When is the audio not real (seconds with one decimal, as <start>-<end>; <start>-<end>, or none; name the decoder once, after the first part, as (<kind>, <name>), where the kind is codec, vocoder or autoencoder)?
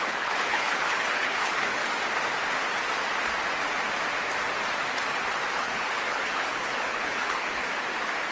0.0-1.8 (codec, HILCodec); 5.5-7.6